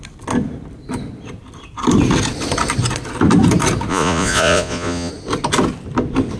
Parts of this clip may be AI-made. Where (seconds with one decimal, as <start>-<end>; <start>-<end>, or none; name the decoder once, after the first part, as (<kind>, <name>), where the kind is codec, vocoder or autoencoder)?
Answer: 3.9-5.1 (vocoder, Vocos)